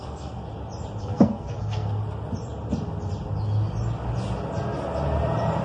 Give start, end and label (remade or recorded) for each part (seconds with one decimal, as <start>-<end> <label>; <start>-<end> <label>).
0.0-0.4 remade; 0.4-1.0 recorded; 1.0-2.0 remade; 2.0-5.6 recorded